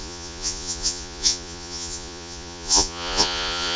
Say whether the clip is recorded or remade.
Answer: remade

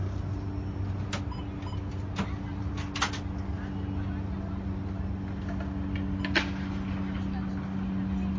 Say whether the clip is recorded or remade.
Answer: recorded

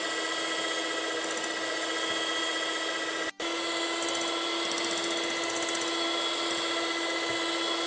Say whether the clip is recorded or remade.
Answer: recorded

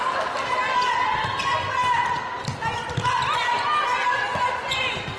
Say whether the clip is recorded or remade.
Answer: recorded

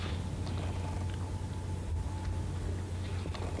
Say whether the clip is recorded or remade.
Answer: recorded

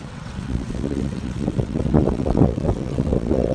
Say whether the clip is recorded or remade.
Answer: remade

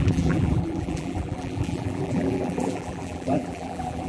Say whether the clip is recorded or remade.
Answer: remade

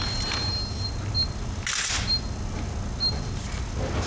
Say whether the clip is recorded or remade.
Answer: recorded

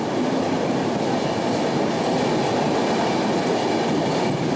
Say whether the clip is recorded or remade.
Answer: recorded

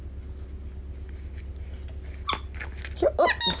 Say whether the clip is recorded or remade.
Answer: recorded